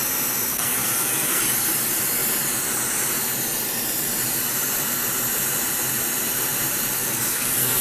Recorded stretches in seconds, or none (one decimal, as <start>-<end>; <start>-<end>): 0.0-0.5; 1.4-7.0